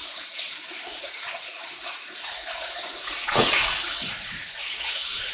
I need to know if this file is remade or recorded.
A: remade